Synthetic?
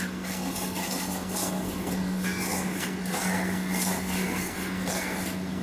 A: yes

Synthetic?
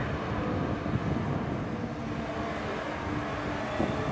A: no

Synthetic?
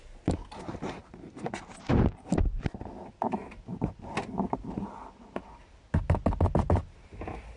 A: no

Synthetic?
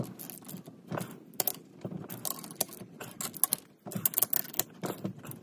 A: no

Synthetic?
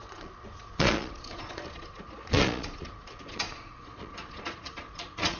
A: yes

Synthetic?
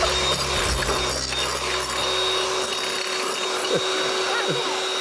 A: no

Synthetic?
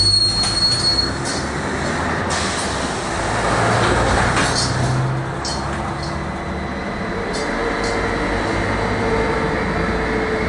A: no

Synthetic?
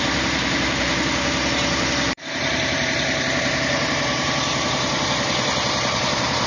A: yes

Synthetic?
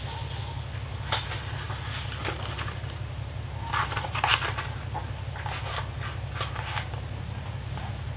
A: no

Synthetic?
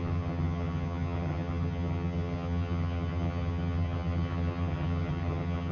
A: yes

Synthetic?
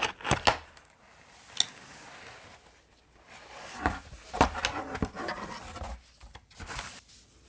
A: no